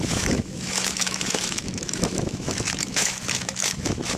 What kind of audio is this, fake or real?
fake